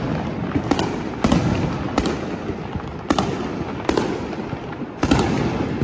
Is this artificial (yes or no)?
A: no